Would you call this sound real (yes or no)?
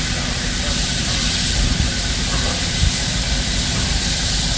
yes